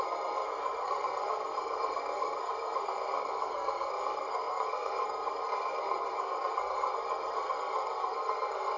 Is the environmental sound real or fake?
fake